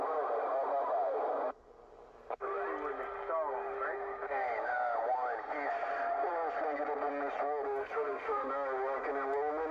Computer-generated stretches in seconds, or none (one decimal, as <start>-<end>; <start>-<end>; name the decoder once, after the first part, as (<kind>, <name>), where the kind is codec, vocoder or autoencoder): 7.8-8.5 (autoencoder, DAC-VAE)